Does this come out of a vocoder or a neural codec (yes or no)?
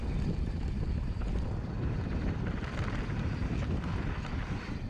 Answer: yes